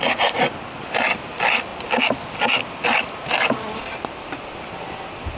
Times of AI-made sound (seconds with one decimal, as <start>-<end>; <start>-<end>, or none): none